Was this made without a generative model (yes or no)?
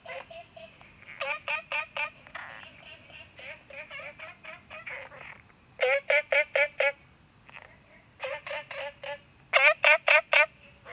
yes